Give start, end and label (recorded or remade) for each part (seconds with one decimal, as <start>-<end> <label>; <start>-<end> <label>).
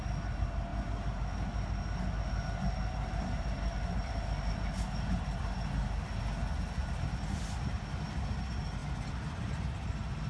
0.0-10.3 recorded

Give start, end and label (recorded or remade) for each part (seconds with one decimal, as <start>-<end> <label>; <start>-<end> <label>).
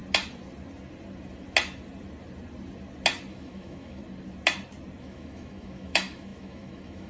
0.0-3.3 recorded; 3.3-4.0 remade; 4.0-5.0 recorded; 5.0-7.1 remade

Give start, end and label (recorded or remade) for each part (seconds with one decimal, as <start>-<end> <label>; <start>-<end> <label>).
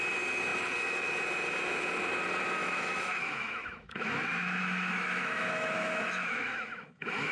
0.0-2.6 recorded; 2.6-7.3 remade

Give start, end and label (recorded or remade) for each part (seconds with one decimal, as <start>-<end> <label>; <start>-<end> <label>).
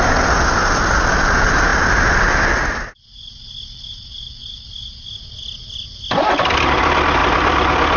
0.0-8.0 recorded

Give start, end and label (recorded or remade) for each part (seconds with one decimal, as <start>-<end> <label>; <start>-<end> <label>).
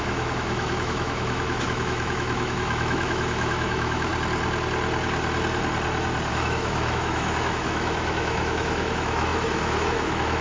0.0-4.1 remade; 4.1-6.3 recorded; 6.3-10.4 remade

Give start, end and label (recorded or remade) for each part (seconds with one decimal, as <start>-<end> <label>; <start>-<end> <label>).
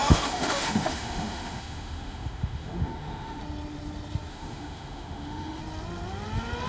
0.0-3.4 remade; 3.4-4.3 recorded; 4.3-5.6 remade; 5.6-6.7 recorded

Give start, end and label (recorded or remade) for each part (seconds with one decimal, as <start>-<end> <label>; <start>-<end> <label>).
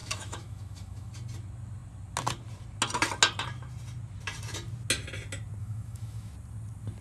0.0-1.1 remade; 1.1-5.6 recorded; 5.6-6.3 remade; 6.3-7.0 recorded